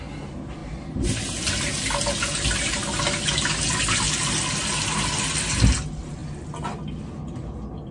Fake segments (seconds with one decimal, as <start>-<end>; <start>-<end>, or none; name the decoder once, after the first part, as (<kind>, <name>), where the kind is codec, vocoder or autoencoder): none